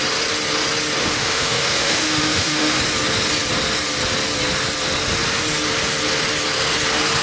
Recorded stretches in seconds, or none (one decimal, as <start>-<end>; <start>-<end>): 0.0-1.0; 2.8-7.2